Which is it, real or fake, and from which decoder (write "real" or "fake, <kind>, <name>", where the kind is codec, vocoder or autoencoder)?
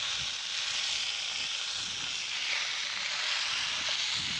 real